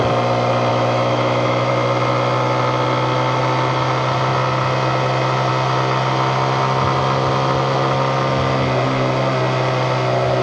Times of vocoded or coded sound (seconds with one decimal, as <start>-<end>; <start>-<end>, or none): 0.7-1.7